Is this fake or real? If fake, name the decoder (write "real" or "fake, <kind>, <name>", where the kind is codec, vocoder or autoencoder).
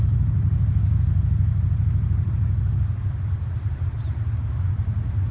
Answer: real